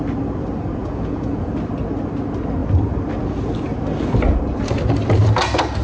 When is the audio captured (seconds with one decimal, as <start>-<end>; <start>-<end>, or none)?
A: 0.0-0.8; 1.5-5.8